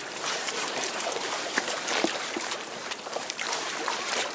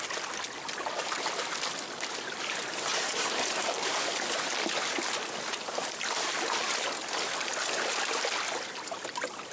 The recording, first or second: second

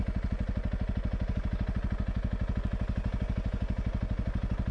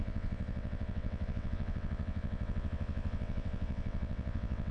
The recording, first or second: first